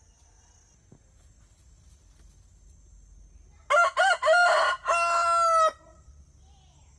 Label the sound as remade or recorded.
recorded